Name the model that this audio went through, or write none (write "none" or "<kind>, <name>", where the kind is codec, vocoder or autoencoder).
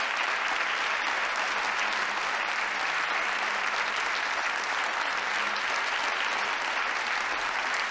none